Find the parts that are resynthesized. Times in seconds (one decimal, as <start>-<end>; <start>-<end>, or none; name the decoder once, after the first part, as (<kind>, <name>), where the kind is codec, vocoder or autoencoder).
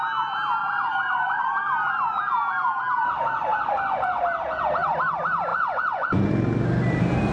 0.6-1.4 (vocoder, Vocos); 3.5-4.2; 5.5-6.3